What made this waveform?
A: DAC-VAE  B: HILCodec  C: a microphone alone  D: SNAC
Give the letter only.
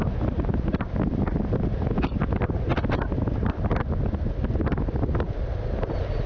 C